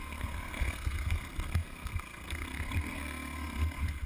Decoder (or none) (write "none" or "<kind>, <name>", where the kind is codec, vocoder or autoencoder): codec, SNAC